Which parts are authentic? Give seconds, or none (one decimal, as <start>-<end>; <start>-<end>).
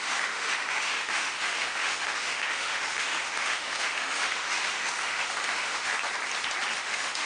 5.9-6.8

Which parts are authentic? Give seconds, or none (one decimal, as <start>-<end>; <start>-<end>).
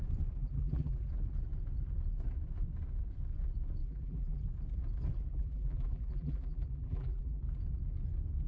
0.0-0.4; 1.1-3.8; 4.4-5.3; 7.4-8.5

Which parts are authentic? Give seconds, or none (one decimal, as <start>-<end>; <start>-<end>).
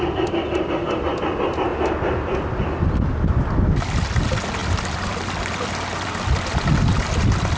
0.0-1.7; 3.0-4.6; 6.1-7.6